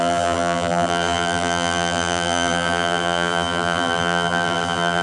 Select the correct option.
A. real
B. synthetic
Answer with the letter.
B